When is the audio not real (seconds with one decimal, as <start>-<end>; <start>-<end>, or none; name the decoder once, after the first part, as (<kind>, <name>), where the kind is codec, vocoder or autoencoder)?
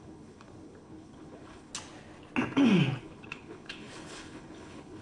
0.0-1.7 (codec, HILCodec); 3.0-5.0